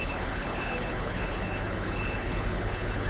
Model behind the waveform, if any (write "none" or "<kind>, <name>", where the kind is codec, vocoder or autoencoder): codec, HILCodec